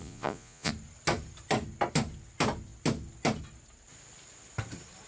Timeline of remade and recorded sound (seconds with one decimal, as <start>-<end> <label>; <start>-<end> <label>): 0.0-0.7 remade; 0.7-5.1 recorded